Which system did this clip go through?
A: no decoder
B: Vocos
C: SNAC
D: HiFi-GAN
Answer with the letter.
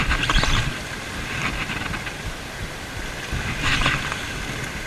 A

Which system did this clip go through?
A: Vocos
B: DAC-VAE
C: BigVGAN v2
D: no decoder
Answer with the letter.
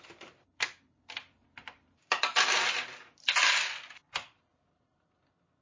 C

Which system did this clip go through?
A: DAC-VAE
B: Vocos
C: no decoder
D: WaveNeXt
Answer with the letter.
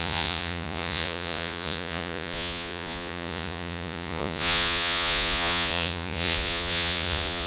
B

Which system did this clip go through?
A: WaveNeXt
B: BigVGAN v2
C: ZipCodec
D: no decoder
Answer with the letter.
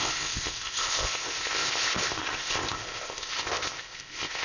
C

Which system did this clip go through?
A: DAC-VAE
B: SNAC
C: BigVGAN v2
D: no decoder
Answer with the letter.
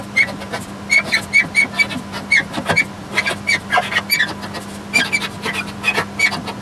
D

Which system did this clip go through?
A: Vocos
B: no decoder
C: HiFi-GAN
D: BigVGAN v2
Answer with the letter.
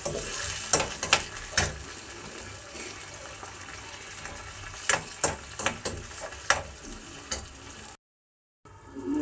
B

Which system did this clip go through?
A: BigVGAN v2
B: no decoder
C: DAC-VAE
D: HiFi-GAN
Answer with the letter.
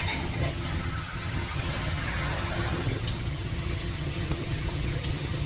D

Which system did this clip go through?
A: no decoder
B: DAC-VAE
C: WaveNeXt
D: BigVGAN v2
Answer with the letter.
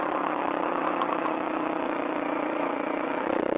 C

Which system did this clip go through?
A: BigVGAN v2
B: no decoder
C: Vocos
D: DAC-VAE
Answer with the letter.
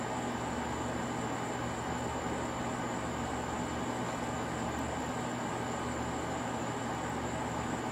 B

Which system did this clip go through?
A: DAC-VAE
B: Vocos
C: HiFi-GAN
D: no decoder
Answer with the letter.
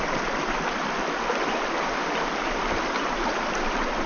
D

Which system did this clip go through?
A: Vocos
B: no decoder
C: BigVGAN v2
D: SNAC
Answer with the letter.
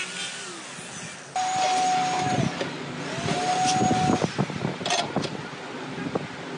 B